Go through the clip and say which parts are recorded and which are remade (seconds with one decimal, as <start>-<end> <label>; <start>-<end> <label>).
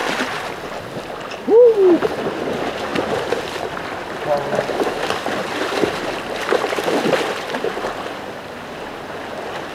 0.0-9.7 recorded